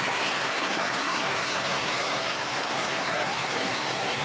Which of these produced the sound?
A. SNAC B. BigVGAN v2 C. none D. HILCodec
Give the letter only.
A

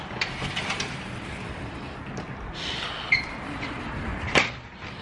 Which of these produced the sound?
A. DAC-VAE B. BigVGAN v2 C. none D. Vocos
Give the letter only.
C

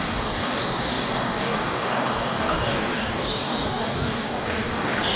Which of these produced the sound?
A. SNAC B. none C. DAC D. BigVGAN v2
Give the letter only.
C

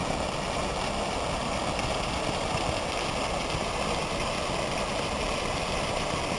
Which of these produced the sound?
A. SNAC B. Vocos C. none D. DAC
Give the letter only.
C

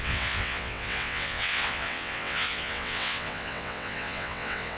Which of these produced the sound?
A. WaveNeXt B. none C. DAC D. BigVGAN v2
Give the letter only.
A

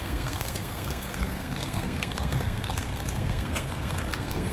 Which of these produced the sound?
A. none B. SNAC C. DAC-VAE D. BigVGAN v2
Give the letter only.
B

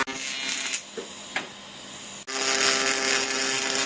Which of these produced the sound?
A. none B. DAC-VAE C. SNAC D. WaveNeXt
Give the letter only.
A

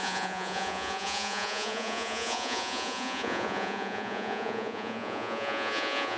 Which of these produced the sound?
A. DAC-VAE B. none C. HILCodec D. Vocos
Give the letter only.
D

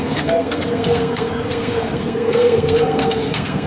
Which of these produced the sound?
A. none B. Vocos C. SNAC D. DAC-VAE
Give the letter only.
C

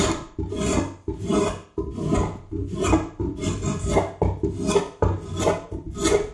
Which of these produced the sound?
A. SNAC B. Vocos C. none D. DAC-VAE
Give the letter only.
C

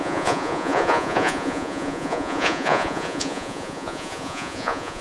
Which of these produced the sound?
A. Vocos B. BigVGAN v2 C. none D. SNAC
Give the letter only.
A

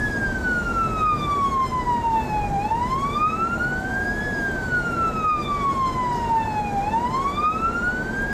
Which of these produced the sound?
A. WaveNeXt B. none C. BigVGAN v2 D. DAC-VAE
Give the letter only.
B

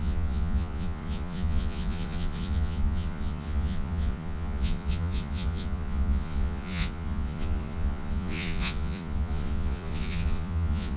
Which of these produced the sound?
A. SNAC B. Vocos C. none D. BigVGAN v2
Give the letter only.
B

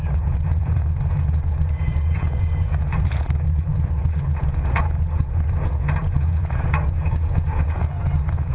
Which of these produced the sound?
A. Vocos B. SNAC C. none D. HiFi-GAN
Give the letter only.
A